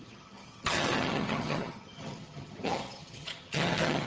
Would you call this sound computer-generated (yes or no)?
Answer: yes